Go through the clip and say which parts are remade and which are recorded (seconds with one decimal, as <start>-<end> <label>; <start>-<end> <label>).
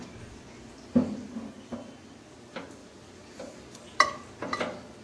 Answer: 0.0-5.0 recorded